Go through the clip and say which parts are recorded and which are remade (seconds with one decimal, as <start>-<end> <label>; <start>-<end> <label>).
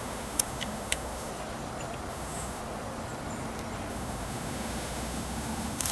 0.0-1.3 remade; 1.3-2.1 recorded; 2.1-2.6 remade; 2.6-3.9 recorded; 3.9-5.9 remade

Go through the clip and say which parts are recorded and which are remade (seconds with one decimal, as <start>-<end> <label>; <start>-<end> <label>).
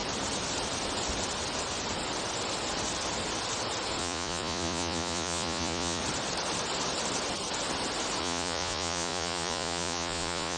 0.0-4.0 recorded; 4.0-6.0 remade; 6.0-8.2 recorded; 8.2-10.6 remade